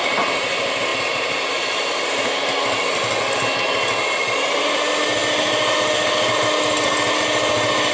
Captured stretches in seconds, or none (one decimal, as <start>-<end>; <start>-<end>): 0.0-7.9